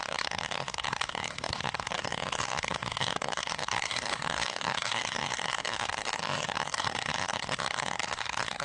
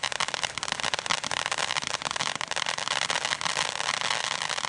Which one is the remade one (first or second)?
first